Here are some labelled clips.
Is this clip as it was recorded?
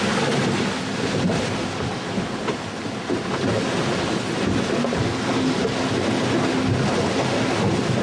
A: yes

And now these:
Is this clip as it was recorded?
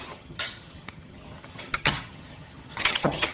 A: no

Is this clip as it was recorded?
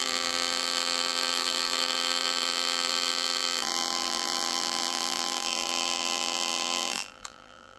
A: no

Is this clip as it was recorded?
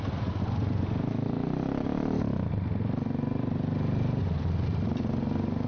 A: yes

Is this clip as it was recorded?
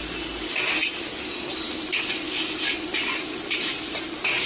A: yes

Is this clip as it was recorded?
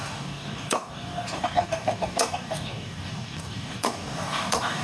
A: no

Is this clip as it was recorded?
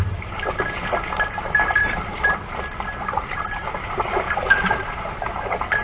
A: no